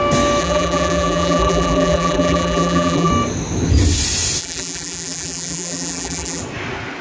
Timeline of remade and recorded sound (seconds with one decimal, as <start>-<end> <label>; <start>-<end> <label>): 0.0-0.4 recorded; 0.4-3.1 remade; 3.1-4.4 recorded; 4.4-6.4 remade; 6.4-7.0 recorded